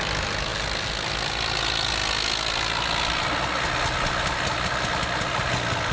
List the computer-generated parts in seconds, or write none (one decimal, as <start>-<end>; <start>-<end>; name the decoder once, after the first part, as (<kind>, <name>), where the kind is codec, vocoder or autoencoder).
none